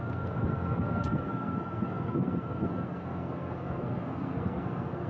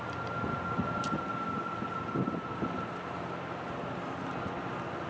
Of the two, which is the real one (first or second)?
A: second